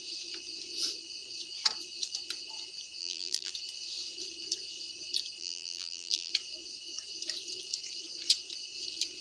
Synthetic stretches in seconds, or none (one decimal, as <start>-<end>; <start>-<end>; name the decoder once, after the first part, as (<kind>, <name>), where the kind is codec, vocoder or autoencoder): 3.0-3.5 (vocoder, BigVGAN v2); 5.4-6.3

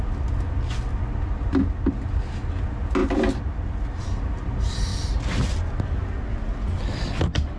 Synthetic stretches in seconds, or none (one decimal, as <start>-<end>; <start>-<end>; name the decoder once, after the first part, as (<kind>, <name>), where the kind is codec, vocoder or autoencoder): 3.0-4.0 (vocoder, BigVGAN v2); 4.9-6.0

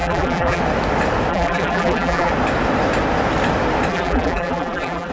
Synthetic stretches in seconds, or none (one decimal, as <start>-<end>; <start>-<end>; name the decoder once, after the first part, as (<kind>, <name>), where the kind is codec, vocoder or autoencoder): 0.0-0.6 (vocoder, BigVGAN v2); 1.3-2.3; 3.9-5.1

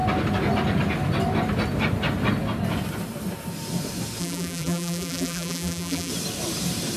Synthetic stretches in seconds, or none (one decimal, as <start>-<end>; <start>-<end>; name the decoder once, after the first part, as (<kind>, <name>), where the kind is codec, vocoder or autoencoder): 4.2-6.1 (vocoder, BigVGAN v2)

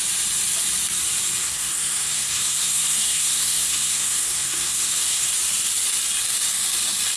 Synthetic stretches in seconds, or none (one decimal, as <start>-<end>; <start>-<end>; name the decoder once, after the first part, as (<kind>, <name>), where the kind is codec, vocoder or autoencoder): 1.4-5.3 (codec, SNAC)

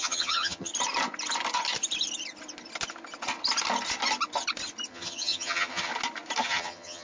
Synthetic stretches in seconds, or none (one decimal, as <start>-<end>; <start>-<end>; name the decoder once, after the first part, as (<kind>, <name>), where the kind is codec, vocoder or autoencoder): 0.0-0.7 (vocoder, HiFi-GAN); 4.9-5.9; 6.4-7.0

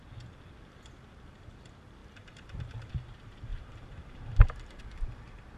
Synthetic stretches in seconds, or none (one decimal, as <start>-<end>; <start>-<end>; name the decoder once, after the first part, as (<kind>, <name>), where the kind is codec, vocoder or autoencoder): 2.0-2.9 (vocoder, BigVGAN v2); 3.5-4.8

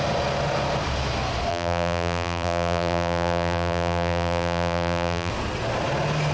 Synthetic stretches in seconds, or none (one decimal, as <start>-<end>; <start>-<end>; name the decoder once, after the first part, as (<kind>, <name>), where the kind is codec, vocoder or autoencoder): 1.5-5.3 (vocoder, BigVGAN v2)